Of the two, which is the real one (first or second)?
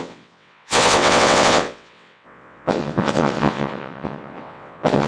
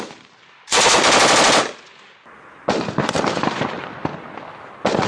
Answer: second